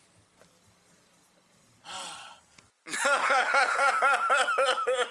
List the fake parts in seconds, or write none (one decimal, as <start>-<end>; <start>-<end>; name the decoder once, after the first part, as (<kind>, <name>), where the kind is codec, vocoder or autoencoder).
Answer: 3.2-3.9 (codec, HILCodec)